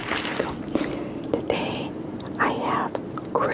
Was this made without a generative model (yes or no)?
no